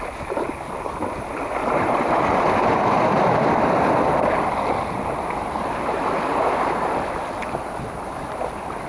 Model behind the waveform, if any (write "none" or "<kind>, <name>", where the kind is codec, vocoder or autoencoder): vocoder, BigVGAN v2